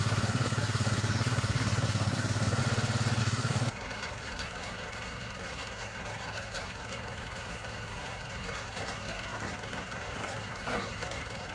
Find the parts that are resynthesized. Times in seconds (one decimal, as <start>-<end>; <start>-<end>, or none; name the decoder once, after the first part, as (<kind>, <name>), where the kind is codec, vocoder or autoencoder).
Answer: 0.0-2.6 (codec, SNAC); 3.2-11.5